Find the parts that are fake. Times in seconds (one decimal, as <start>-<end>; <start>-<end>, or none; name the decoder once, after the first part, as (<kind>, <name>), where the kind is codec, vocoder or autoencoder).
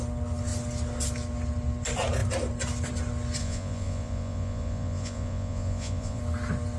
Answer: 3.4-6.2 (vocoder, Vocos)